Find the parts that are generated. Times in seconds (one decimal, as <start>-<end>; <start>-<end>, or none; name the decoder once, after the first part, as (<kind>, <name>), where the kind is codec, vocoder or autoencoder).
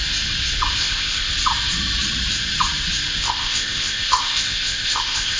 0.8-1.3 (codec, ZipCodec); 3.2-5.4